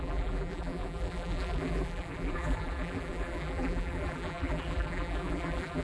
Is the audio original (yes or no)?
no